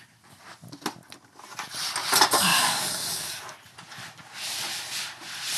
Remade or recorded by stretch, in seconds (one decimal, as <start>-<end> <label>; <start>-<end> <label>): 0.0-2.5 recorded; 2.5-3.4 remade; 3.4-5.6 recorded